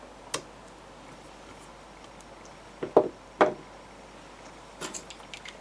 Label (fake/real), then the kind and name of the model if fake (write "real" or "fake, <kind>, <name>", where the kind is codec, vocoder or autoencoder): real